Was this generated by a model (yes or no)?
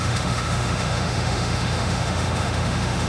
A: yes